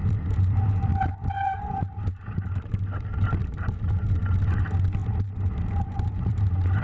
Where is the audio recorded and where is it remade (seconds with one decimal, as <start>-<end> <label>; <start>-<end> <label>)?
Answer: 0.0-0.9 remade; 0.9-3.4 recorded; 3.4-3.9 remade; 3.9-5.0 recorded; 5.0-6.8 remade